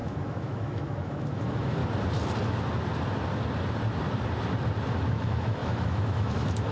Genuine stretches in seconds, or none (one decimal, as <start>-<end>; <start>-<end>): 1.8-5.1